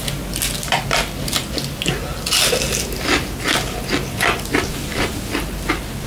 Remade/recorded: recorded